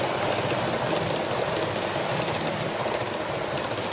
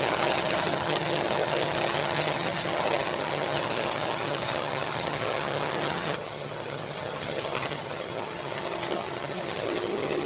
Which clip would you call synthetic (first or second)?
second